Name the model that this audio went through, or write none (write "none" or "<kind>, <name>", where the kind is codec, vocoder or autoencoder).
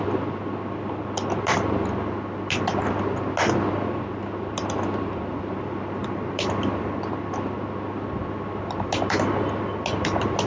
none